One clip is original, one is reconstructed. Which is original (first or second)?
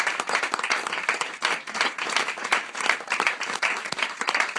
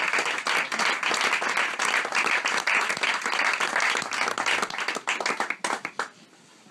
second